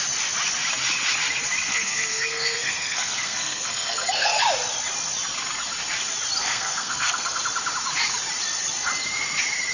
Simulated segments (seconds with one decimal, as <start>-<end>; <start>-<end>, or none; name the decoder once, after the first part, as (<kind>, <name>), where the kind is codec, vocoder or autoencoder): 1.7-4.4 (codec, SNAC); 6.4-7.4